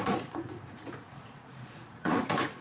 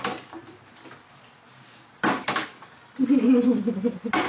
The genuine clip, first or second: second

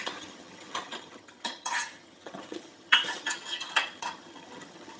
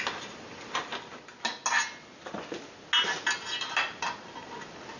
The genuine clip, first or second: second